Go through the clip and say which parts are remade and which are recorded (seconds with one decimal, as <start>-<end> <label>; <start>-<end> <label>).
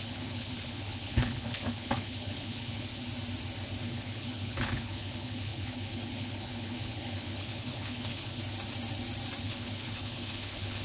0.0-2.9 remade; 2.9-3.8 recorded; 3.8-8.4 remade; 8.4-9.4 recorded; 9.4-10.8 remade